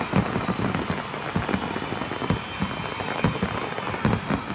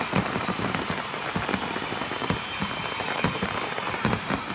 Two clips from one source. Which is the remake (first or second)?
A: second